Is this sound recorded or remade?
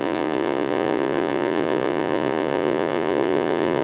remade